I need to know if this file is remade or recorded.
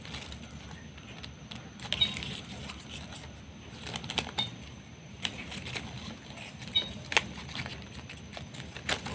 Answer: recorded